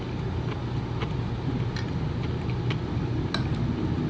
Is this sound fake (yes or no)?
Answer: no